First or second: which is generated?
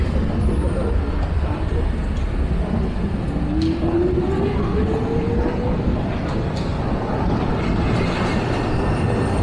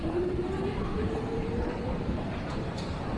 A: second